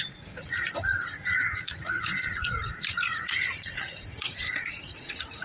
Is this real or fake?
fake